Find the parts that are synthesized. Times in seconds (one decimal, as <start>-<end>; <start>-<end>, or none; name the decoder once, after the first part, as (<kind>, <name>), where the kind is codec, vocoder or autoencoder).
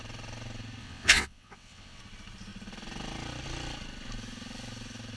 0.8-2.0 (vocoder, WaveNeXt)